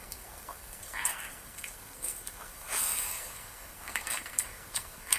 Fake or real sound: fake